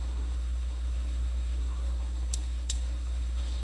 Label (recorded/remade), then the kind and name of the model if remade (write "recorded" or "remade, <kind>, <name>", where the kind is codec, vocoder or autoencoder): remade, codec, SNAC